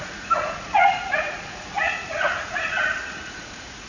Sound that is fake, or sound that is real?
fake